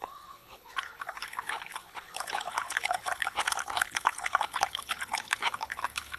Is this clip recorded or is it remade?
remade